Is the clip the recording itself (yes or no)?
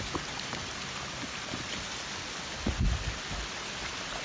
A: yes